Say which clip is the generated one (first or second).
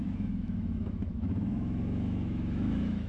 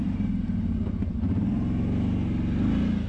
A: first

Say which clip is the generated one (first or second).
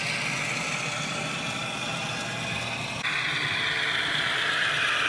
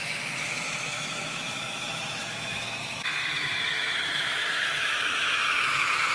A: second